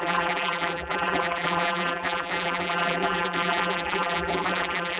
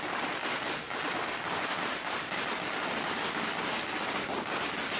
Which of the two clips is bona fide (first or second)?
second